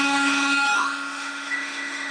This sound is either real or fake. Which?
fake